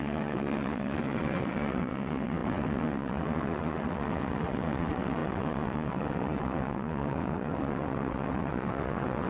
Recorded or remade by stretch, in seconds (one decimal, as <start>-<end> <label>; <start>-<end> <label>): 0.0-9.3 remade